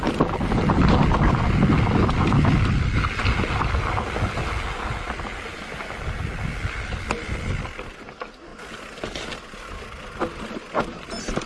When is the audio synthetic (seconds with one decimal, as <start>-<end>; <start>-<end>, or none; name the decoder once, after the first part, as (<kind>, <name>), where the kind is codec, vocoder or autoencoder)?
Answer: none